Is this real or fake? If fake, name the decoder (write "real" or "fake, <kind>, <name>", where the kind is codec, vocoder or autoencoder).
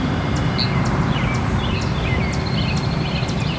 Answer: real